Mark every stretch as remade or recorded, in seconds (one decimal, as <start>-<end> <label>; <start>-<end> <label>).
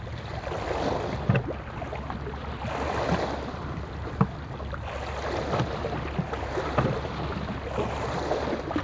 0.0-8.8 recorded